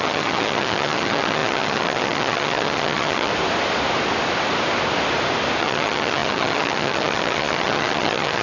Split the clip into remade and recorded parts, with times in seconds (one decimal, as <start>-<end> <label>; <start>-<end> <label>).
0.0-3.3 remade; 3.3-5.6 recorded; 5.6-8.4 remade